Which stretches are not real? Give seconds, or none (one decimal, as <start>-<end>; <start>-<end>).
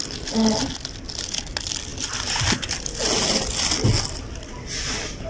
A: none